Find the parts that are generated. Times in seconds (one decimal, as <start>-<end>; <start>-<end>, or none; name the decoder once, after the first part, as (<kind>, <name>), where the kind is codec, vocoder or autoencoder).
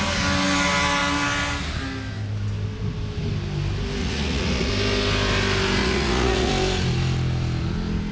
4.0-4.7 (vocoder, Vocos); 5.8-6.5